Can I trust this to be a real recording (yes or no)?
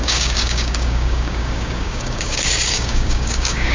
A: no